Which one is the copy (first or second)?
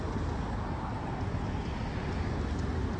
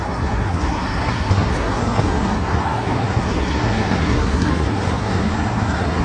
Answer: second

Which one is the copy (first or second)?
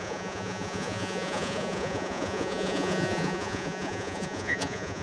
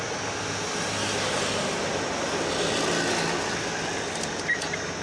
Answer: first